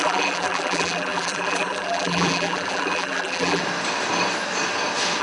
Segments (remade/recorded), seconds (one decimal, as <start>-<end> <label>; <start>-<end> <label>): 0.0-3.6 remade; 3.6-5.2 recorded